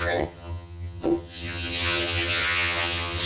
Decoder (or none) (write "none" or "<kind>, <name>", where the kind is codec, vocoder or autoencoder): vocoder, HiFi-GAN